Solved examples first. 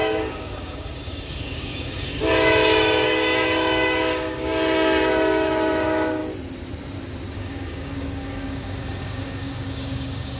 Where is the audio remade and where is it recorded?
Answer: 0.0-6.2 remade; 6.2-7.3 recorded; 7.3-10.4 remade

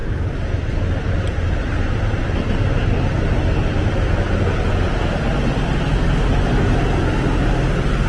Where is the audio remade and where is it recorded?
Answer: 0.0-8.1 recorded

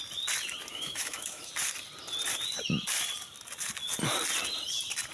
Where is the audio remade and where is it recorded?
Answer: 0.0-0.7 recorded; 0.7-1.5 remade; 1.5-5.1 recorded

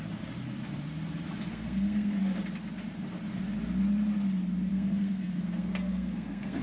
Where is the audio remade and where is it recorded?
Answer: 0.0-1.5 recorded; 1.5-2.2 remade; 2.2-4.7 recorded; 4.7-6.6 remade

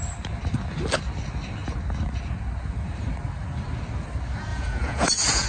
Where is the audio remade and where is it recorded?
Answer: 0.0-4.5 recorded; 4.5-5.5 remade

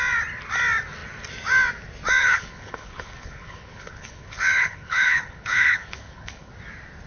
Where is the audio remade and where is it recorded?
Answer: 0.0-2.2 recorded; 2.2-6.5 remade; 6.5-7.1 recorded